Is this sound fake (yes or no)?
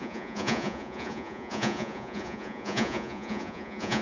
yes